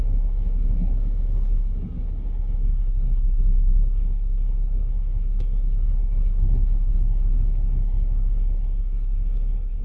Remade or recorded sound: remade